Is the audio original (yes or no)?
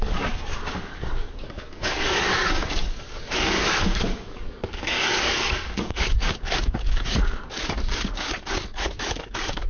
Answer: no